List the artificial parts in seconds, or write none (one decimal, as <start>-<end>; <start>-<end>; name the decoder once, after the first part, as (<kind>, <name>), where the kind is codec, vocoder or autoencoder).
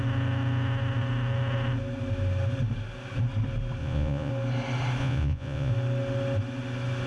3.8-4.3 (vocoder, Vocos); 5.0-5.7